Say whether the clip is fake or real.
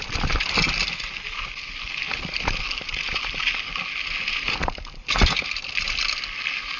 real